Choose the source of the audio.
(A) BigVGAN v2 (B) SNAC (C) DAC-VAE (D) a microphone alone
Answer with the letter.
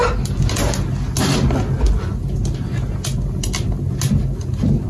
D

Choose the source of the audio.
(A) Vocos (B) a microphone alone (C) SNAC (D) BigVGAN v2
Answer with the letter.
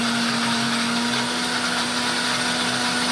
B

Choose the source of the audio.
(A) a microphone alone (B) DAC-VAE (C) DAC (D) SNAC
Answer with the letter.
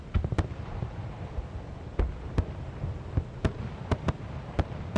A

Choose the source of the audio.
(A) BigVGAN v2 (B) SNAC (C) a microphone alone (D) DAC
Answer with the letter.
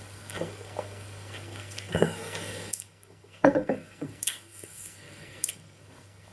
B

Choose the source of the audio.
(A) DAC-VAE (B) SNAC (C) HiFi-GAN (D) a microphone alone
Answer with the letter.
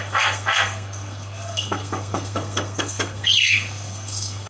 B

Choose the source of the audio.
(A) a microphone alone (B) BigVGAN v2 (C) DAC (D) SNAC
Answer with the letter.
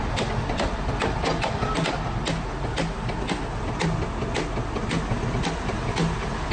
A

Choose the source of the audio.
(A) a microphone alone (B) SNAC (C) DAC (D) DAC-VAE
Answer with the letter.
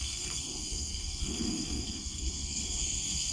B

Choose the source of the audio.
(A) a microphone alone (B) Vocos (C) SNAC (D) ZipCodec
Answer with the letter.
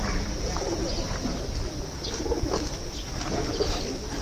A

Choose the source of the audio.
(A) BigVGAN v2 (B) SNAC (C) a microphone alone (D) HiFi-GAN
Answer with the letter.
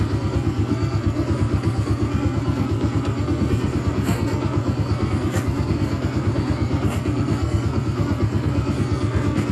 B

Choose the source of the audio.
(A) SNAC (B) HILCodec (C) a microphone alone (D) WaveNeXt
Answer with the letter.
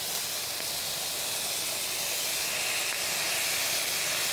C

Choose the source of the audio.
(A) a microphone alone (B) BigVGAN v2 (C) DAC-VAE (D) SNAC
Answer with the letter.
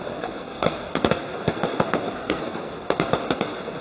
D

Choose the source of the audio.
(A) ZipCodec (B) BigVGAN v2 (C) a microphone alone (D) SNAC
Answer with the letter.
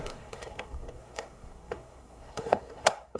D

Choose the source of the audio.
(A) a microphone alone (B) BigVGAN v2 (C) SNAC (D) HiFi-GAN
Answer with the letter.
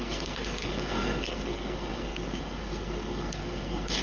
C